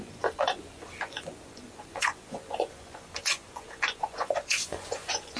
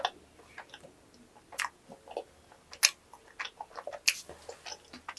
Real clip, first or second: second